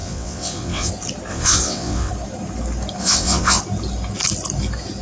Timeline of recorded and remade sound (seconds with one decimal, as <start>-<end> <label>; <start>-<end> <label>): 0.0-0.9 remade; 0.9-1.3 recorded; 1.3-2.1 remade; 2.1-3.0 recorded; 3.0-3.6 remade; 3.6-5.0 recorded